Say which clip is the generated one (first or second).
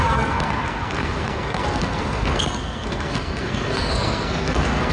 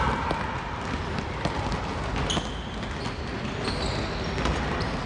first